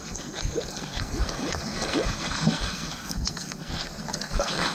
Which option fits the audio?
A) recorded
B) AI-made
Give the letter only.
B